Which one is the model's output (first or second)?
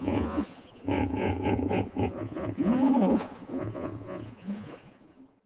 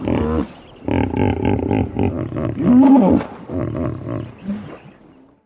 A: first